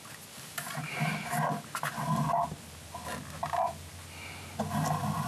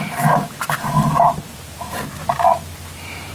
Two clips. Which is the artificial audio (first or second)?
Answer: second